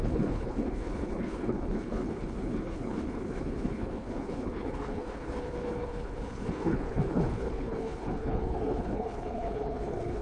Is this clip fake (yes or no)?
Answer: yes